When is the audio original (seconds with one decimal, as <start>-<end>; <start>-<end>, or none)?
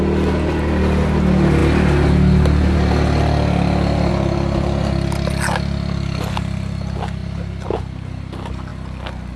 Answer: 0.0-9.4